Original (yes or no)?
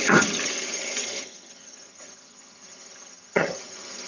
no